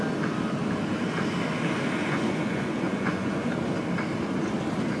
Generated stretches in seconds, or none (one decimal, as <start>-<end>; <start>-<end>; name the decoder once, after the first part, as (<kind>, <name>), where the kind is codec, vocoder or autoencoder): 2.0-3.5 (vocoder, Vocos)